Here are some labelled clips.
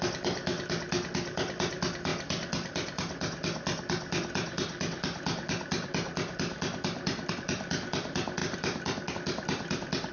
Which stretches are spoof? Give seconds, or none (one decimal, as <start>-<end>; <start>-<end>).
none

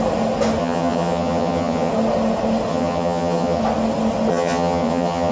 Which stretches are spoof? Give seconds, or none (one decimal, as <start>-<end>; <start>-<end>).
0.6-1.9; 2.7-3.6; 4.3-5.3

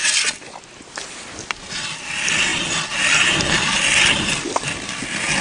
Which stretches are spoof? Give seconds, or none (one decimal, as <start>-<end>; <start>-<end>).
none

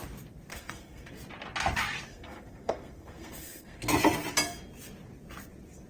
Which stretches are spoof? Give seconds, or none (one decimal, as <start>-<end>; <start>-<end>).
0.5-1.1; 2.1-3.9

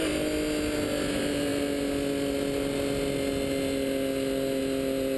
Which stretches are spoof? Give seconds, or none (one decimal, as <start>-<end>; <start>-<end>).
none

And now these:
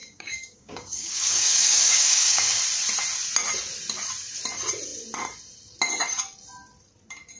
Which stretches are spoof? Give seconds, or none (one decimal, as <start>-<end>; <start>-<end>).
0.0-2.6